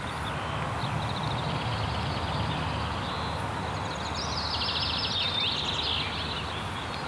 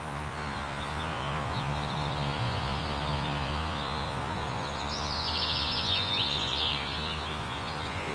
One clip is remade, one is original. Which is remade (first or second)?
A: second